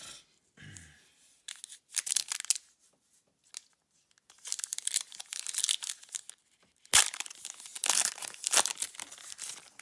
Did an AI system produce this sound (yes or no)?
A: no